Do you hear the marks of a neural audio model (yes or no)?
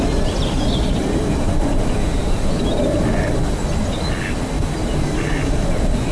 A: no